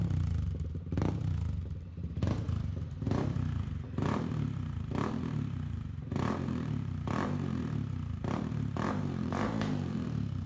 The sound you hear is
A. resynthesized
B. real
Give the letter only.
A